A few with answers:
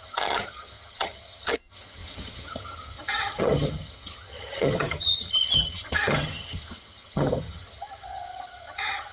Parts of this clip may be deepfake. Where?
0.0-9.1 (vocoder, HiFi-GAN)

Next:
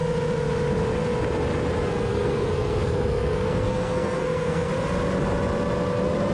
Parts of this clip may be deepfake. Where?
2.1-4.7 (codec, SNAC)

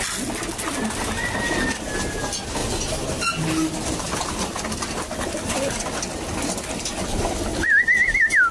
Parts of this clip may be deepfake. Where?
none

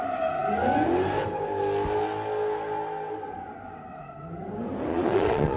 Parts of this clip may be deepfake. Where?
4.9-5.6 (vocoder, Vocos)

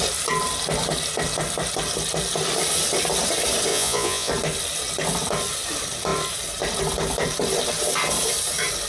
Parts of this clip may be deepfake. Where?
3.7-4.3 (vocoder, Vocos)

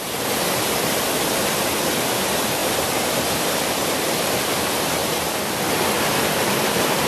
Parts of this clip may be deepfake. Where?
0.0-2.6 (vocoder, BigVGAN v2); 4.6-7.1

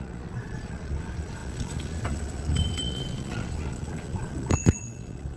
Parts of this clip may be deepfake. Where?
0.0-5.4 (vocoder, Vocos)

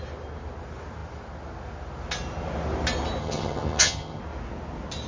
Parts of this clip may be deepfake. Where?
3.2-4.2 (vocoder, HiFi-GAN)